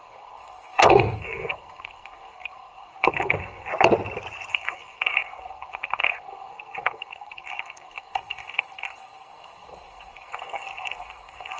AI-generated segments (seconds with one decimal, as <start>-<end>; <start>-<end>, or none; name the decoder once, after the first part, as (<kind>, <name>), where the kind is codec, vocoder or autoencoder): 0.0-3.7 (codec, SNAC); 4.5-11.6